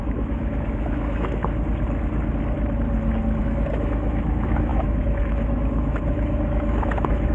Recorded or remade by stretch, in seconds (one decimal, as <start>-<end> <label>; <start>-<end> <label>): 0.0-1.4 remade; 1.4-3.4 recorded; 3.4-7.3 remade